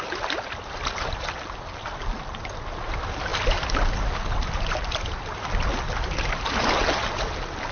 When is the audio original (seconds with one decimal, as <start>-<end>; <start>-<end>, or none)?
0.0-7.7